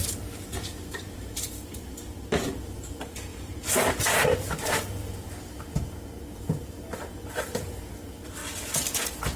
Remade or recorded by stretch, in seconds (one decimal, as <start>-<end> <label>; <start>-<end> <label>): 0.0-8.4 remade; 8.4-9.0 recorded; 9.0-9.4 remade